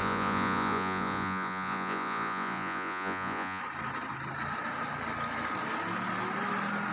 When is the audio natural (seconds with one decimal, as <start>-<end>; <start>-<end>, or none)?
3.6-6.9